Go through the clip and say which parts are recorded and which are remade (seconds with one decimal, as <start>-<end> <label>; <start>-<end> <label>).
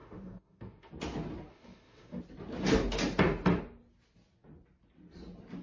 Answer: 0.0-0.9 remade; 0.9-1.5 recorded; 1.5-2.2 remade; 2.2-5.6 recorded